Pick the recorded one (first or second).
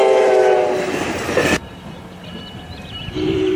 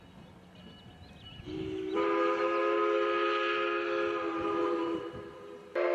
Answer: second